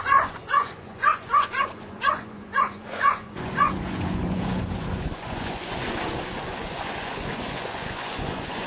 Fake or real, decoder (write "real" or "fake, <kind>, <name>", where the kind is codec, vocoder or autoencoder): fake, vocoder, Vocos